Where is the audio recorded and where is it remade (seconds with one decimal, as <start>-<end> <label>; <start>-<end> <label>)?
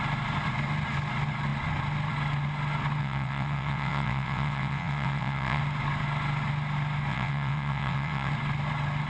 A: 0.0-3.0 recorded; 3.0-5.6 remade; 5.6-7.1 recorded; 7.1-8.3 remade; 8.3-9.1 recorded